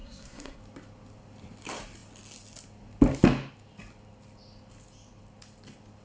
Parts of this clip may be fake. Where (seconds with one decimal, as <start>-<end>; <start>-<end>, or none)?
0.0-0.6